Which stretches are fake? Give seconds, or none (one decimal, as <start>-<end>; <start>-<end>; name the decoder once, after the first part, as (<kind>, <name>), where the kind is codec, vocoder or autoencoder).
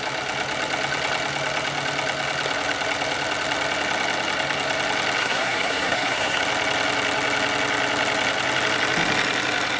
5.2-6.4 (codec, SNAC)